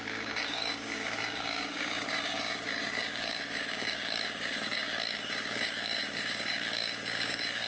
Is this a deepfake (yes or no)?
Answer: yes